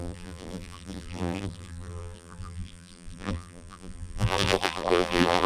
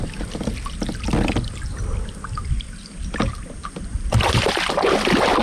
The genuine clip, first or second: second